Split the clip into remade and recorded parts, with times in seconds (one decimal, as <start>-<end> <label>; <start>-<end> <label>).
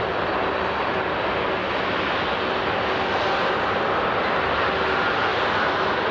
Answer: 0.0-6.1 recorded